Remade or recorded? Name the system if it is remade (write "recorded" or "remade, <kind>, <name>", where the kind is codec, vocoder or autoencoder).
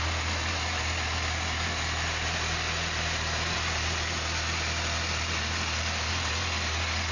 recorded